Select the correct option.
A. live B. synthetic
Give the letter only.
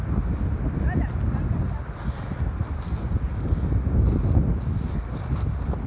A